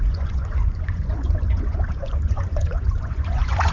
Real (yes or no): no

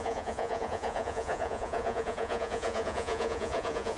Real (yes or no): no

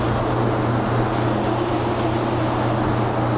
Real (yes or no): yes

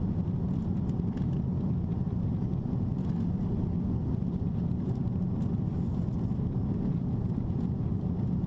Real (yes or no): yes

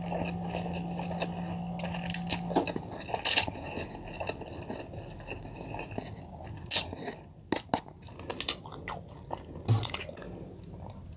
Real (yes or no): yes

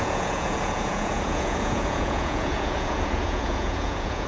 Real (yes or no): no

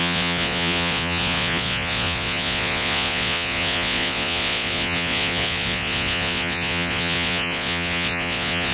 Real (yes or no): no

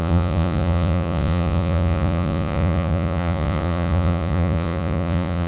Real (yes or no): no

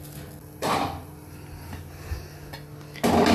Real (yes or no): yes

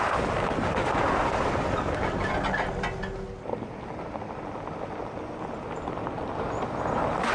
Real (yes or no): yes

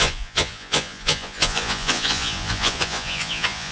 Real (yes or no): no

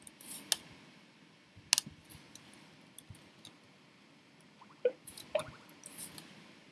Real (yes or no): yes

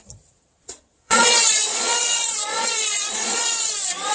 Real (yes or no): no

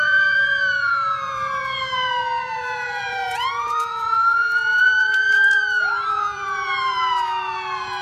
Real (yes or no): no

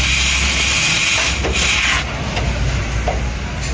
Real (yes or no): yes